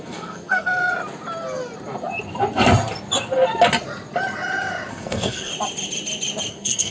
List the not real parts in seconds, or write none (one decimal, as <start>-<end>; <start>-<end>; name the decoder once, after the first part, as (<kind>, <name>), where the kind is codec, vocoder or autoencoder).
0.0-0.8 (codec, SNAC); 4.9-5.5; 6.5-6.9